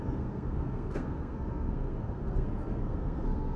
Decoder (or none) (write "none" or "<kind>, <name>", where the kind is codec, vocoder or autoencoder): codec, SNAC